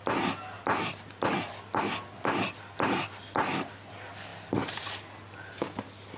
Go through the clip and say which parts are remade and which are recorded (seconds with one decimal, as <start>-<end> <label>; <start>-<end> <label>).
0.0-6.2 recorded